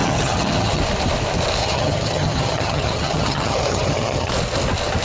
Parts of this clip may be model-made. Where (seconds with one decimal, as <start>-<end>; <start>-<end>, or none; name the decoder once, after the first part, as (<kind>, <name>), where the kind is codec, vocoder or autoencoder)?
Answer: 0.0-0.8 (vocoder, HiFi-GAN); 1.6-4.3